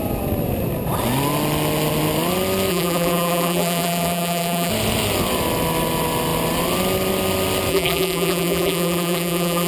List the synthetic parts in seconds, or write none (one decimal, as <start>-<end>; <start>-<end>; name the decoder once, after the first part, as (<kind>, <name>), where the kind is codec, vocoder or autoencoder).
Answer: 2.7-4.7 (vocoder, BigVGAN v2); 7.7-9.7